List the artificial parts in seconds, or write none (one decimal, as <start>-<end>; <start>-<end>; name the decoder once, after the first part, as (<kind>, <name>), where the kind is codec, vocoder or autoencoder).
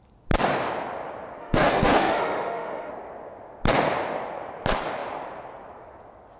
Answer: 1.4-2.9 (autoencoder, DAC-VAE)